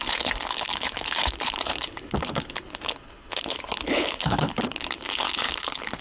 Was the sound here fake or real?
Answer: fake